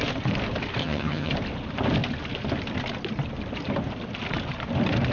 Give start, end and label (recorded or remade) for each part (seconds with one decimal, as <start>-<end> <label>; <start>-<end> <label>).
0.0-0.8 recorded; 0.8-1.3 remade; 1.3-5.1 recorded